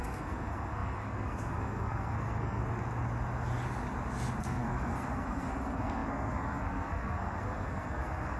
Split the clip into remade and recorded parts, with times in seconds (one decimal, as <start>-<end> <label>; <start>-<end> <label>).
0.0-2.6 remade; 2.6-4.4 recorded; 4.4-8.4 remade